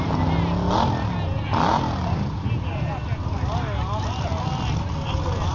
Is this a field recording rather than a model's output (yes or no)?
yes